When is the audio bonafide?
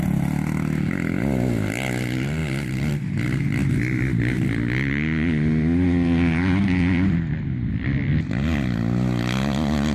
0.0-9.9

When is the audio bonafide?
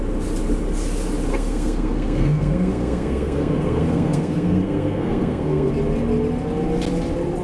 0.0-1.3; 5.7-7.4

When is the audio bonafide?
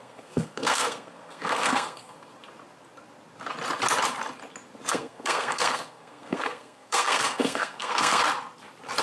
2.3-4.9; 8.2-9.0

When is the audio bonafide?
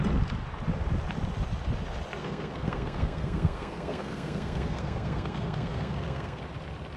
0.0-2.2; 6.4-7.0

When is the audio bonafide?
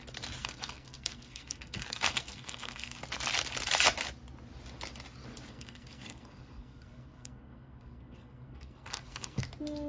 0.0-0.4; 3.0-5.5; 9.4-9.9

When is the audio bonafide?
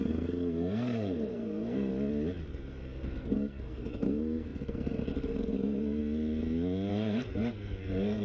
1.9-2.5; 6.0-6.9